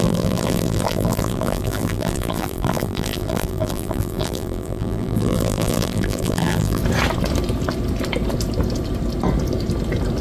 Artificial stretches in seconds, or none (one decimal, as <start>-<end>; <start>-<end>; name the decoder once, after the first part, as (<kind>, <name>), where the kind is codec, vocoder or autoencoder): 0.0-6.8 (vocoder, BigVGAN v2)